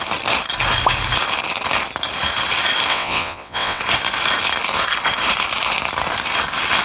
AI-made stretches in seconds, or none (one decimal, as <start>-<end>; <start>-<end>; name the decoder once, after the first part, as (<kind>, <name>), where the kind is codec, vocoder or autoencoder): 2.9-3.8 (vocoder, WaveNeXt)